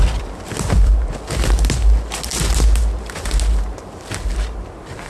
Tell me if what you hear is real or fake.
real